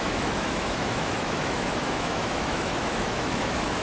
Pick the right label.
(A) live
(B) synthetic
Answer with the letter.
B